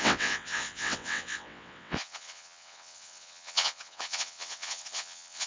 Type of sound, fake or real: fake